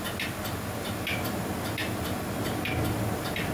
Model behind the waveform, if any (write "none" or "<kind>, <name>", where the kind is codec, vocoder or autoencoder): none